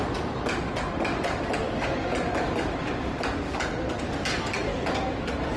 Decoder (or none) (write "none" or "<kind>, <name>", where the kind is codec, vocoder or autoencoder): none